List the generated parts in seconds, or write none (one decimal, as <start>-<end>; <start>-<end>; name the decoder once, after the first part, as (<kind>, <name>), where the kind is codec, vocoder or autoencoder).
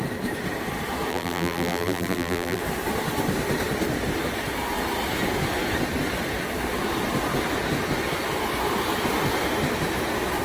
1.1-2.6 (vocoder, BigVGAN v2)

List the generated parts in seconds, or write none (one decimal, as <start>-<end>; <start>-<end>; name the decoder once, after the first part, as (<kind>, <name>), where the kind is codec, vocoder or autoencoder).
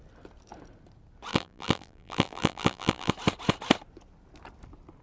1.3-3.1 (vocoder, BigVGAN v2)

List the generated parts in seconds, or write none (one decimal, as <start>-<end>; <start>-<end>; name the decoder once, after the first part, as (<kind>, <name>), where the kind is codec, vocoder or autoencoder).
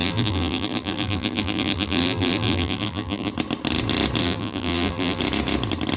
0.0-3.3 (vocoder, BigVGAN v2); 4.2-5.2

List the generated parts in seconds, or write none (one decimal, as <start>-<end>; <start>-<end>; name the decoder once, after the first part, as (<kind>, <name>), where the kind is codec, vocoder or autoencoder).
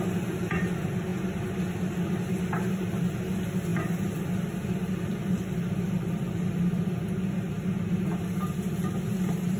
3.7-6.6 (vocoder, BigVGAN v2)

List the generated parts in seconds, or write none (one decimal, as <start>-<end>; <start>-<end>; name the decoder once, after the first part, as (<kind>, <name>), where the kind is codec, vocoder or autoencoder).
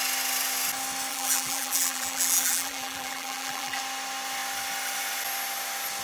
1.1-3.8 (vocoder, BigVGAN v2)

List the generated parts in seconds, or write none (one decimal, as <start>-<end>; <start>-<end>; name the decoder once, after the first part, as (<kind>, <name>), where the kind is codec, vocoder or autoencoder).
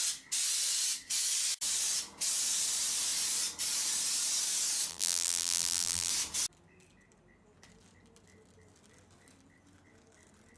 4.9-6.1 (vocoder, BigVGAN v2)